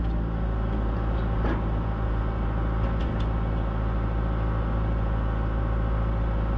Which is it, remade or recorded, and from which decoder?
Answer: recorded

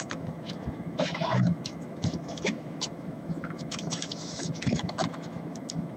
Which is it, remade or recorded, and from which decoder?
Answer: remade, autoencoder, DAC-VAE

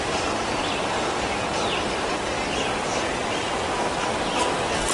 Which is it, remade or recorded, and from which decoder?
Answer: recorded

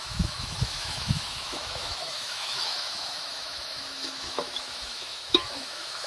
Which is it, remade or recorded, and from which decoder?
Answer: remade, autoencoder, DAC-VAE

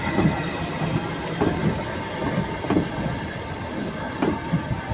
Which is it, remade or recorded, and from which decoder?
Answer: recorded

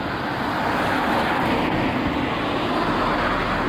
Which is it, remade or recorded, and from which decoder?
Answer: recorded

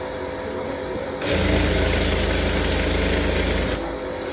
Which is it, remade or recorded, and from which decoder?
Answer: recorded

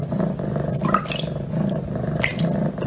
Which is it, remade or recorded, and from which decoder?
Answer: recorded